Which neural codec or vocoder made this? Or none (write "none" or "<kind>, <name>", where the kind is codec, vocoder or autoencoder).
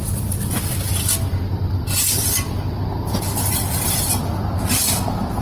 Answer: none